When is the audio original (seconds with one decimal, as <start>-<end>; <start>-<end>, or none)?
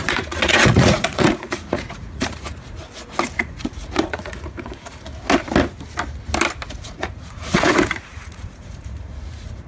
2.8-3.4; 5.1-6.8